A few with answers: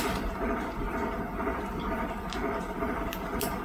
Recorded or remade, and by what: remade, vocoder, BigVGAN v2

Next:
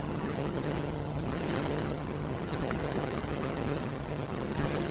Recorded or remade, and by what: remade, vocoder, HiFi-GAN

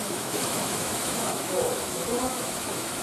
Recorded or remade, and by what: remade, autoencoder, DAC-VAE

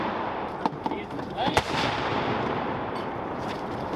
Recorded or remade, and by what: remade, vocoder, BigVGAN v2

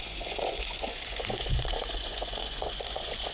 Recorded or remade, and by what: remade, vocoder, Vocos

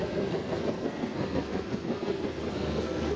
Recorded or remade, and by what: remade, codec, SNAC